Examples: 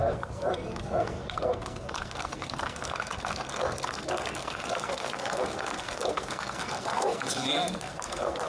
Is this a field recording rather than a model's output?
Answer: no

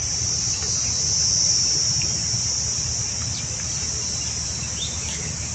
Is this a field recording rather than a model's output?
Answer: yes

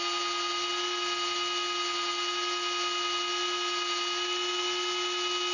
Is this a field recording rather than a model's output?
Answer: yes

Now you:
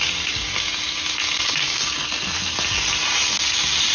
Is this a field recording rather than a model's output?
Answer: yes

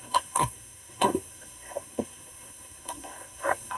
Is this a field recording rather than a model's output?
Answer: no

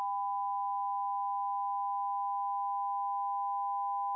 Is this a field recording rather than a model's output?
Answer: yes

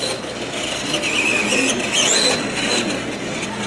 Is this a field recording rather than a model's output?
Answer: yes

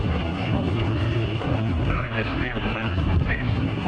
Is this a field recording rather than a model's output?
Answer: no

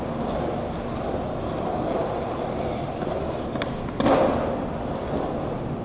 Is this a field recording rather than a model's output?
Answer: yes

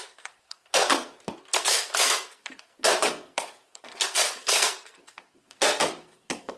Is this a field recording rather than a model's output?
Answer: no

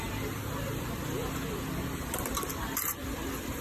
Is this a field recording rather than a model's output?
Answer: yes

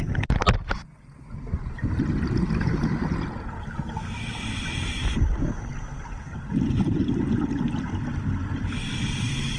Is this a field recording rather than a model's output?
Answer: yes